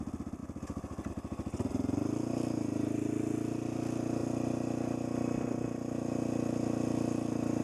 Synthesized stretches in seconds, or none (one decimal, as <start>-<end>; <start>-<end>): none